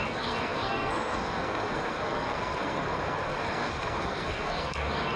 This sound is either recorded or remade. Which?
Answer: remade